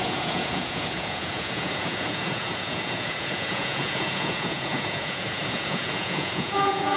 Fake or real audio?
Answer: fake